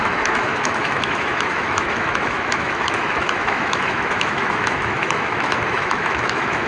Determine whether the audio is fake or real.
fake